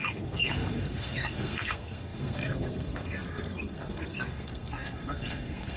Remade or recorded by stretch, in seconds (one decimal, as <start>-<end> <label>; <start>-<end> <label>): 0.0-5.8 remade